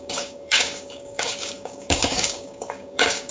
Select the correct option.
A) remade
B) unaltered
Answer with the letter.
A